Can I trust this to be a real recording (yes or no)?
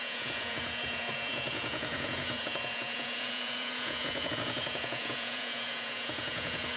no